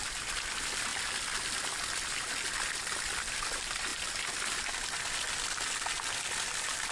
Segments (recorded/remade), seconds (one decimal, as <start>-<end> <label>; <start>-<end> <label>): 0.0-6.9 recorded